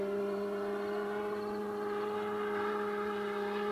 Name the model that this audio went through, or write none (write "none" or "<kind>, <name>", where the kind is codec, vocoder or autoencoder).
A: none